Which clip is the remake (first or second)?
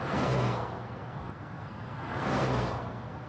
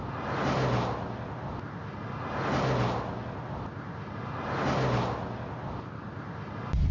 first